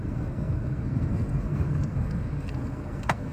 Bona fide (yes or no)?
no